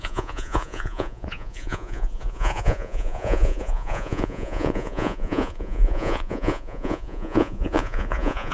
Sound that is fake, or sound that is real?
fake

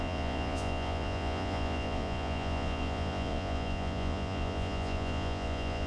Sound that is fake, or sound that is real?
fake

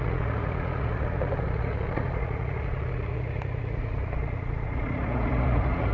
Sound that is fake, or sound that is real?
fake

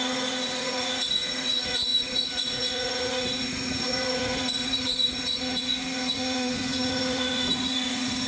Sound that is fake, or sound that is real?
fake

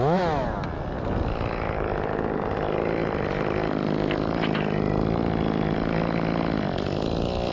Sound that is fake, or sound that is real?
real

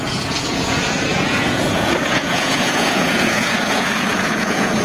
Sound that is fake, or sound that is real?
fake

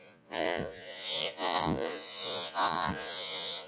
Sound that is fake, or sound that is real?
fake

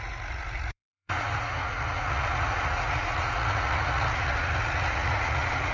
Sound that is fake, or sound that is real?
fake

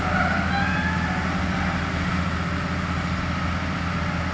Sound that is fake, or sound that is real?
real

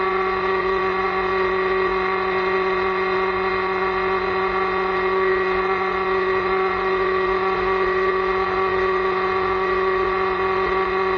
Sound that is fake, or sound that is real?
fake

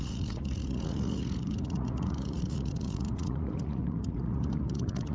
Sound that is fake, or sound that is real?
fake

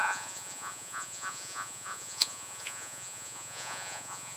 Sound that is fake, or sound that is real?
fake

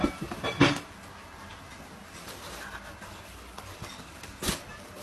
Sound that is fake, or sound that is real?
real